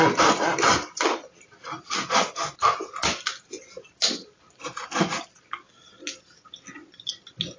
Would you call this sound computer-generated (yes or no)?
no